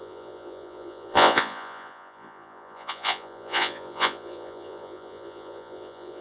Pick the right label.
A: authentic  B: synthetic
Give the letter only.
B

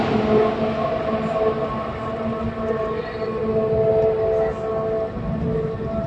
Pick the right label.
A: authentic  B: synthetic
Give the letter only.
A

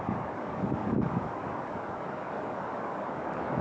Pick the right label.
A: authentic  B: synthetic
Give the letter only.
B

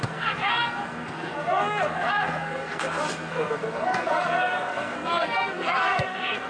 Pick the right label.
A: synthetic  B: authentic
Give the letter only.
A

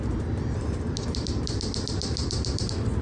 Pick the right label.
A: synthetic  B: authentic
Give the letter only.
A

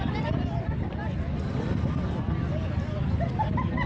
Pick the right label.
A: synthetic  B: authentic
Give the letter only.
B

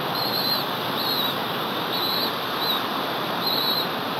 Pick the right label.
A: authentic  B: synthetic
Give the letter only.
B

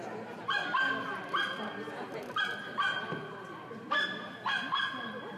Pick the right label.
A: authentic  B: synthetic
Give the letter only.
A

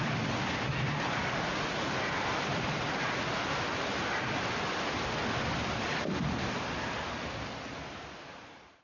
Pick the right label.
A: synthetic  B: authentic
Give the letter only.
B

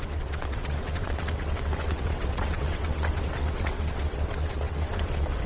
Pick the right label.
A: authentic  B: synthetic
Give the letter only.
B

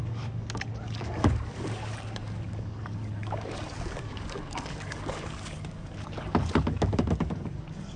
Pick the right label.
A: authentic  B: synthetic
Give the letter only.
B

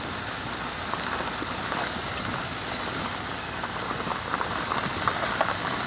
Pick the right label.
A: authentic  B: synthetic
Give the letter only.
A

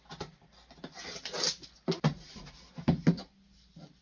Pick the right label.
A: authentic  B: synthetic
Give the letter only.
A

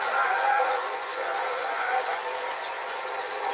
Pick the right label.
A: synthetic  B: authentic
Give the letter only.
A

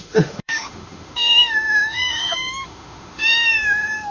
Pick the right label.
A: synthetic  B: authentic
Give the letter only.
A